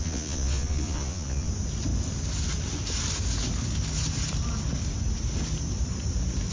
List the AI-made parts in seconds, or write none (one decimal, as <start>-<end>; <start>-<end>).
0.0-1.5